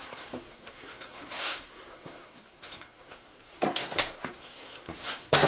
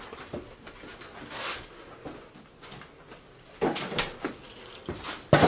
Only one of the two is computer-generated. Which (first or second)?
first